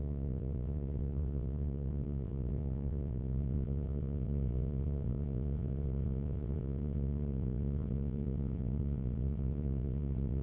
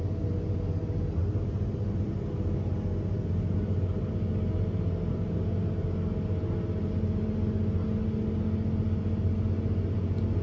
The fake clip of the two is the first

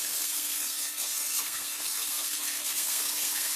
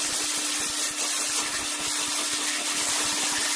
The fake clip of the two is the first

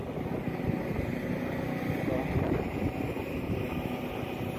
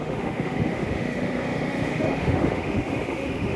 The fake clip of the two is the second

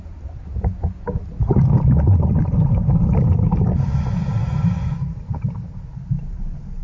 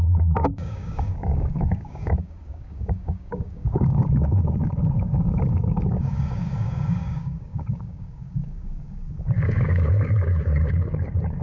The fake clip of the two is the second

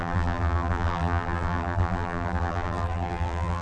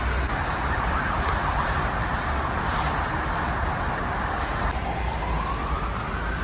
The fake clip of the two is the first